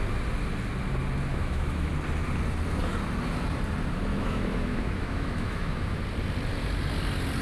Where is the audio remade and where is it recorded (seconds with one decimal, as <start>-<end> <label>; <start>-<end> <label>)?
0.0-1.3 recorded; 1.3-1.9 remade; 1.9-4.1 recorded; 4.1-6.0 remade; 6.0-7.4 recorded